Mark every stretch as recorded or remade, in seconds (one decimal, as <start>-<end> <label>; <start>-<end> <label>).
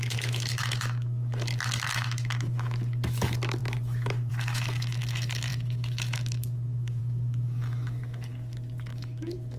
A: 0.0-9.6 remade